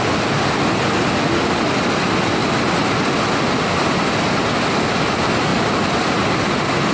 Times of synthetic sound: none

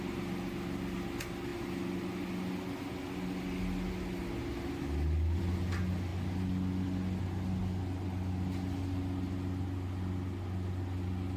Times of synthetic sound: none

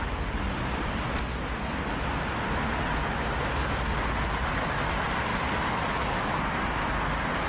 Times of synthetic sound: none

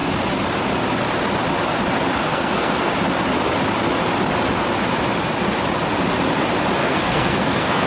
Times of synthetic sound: 2.3-2.9 (codec, SNAC); 6.8-7.9